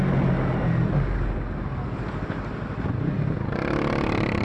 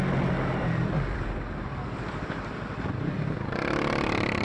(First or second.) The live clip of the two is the first